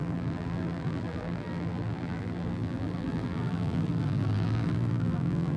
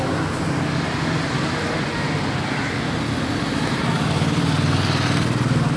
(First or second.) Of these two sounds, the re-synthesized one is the first